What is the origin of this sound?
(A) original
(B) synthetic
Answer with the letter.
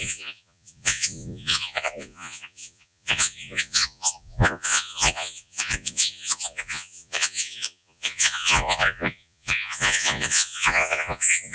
B